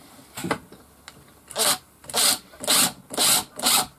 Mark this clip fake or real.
real